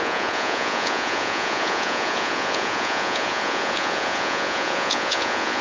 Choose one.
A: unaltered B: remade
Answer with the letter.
B